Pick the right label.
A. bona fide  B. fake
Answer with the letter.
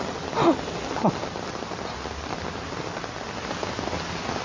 A